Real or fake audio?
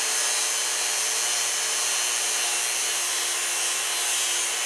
real